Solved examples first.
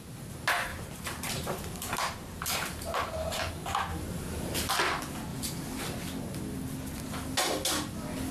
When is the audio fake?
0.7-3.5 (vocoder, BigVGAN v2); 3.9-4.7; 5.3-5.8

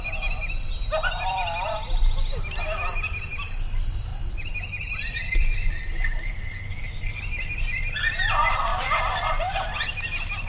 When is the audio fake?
4.1-5.7 (vocoder, BigVGAN v2); 8.7-10.0

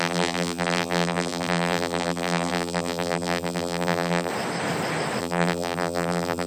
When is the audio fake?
0.0-4.3 (vocoder, BigVGAN v2); 5.2-6.5

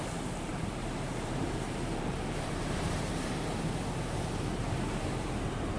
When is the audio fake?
0.5-3.7 (vocoder, BigVGAN v2); 4.5-5.8